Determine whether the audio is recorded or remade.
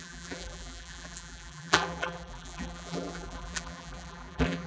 remade